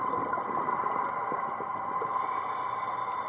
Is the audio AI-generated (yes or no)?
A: yes